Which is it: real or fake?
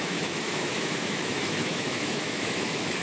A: fake